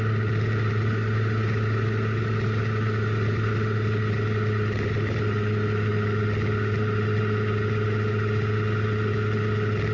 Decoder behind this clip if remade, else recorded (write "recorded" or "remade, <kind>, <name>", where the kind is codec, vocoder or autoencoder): recorded